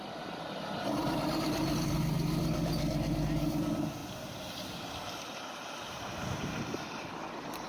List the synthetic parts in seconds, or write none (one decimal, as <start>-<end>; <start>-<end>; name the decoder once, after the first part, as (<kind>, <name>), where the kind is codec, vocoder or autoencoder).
1.0-2.1 (vocoder, BigVGAN v2); 4.0-5.0